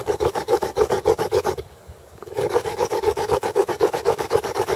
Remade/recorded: remade